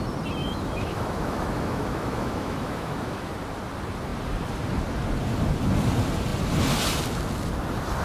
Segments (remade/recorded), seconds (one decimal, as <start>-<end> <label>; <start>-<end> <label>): 0.0-0.4 recorded; 0.4-3.3 remade; 3.3-8.0 recorded